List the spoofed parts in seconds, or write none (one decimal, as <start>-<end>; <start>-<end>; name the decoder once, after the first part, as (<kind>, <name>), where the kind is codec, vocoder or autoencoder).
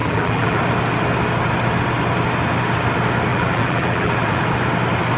0.0-0.6 (vocoder, BigVGAN v2); 3.3-4.4